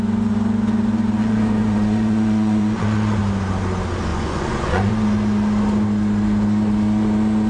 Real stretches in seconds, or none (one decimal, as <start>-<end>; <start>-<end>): 0.0-1.2; 3.2-4.1; 4.9-7.5